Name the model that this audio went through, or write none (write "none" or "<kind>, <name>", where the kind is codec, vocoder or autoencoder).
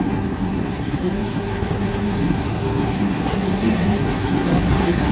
codec, SNAC